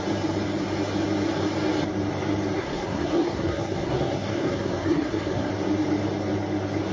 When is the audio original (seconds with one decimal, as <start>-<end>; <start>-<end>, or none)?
0.0-2.6; 5.5-6.9